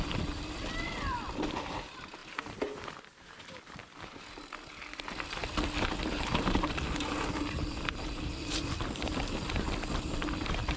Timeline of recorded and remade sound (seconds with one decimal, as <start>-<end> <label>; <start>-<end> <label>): 0.0-2.2 remade; 2.2-2.8 recorded; 2.8-3.8 remade; 3.8-7.6 recorded; 7.6-10.8 remade